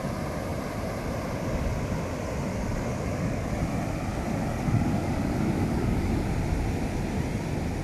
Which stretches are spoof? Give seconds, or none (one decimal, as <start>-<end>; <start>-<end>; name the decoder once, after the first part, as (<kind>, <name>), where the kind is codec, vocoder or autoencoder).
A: 2.5-3.5 (codec, DAC); 4.1-6.1